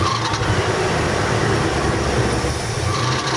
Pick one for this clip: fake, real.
real